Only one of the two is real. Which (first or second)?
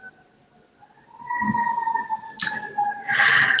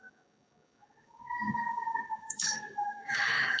first